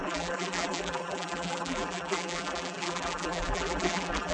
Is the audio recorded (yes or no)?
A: no